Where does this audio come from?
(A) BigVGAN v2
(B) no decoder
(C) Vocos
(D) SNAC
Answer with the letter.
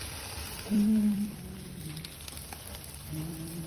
A